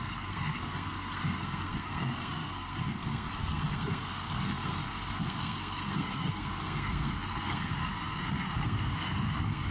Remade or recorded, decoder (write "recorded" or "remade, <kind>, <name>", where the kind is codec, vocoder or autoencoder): remade, codec, SNAC